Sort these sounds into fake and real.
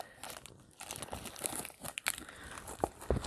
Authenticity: real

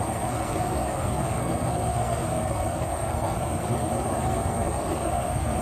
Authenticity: fake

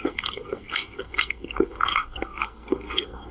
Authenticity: fake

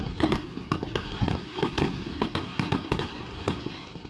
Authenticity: fake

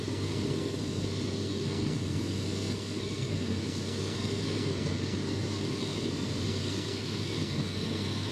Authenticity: fake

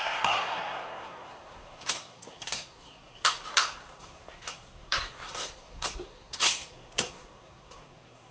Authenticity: fake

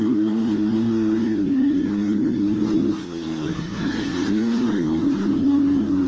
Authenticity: fake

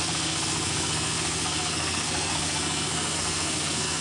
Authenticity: fake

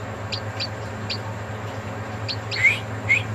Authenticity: real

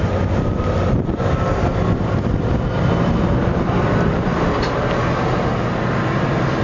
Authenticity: real